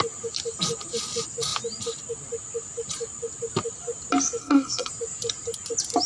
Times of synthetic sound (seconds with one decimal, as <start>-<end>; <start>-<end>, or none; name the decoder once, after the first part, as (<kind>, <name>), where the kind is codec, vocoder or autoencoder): 4.4-4.9 (codec, SNAC)